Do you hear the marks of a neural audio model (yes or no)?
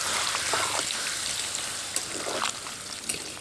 no